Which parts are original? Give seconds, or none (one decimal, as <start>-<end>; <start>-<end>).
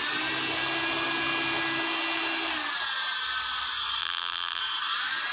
0.0-4.0; 4.6-5.3